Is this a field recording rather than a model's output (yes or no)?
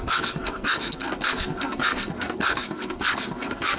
no